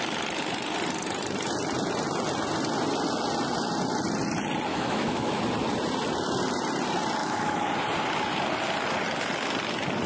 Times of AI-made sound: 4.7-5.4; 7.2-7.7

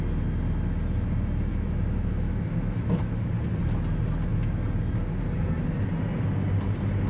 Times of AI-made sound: 1.5-3.3

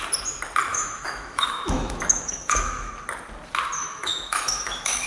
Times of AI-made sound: 0.7-2.9; 3.8-5.1

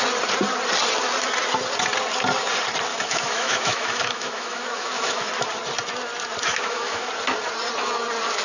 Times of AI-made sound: 2.9-5.3; 6.5-7.1